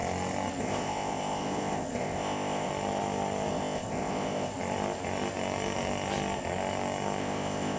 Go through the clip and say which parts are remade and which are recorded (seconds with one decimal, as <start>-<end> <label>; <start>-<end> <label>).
0.0-0.6 recorded; 0.6-2.7 remade; 2.7-3.5 recorded; 3.5-4.5 remade; 4.5-7.2 recorded; 7.2-7.8 remade